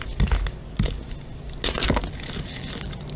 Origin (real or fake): real